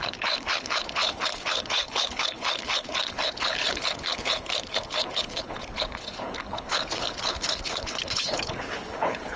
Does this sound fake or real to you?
fake